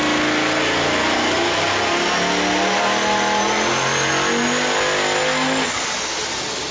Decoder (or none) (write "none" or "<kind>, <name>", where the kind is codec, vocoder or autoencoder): none